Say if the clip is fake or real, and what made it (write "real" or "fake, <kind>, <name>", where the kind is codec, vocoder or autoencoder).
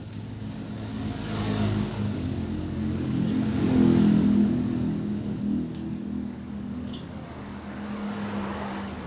fake, codec, DAC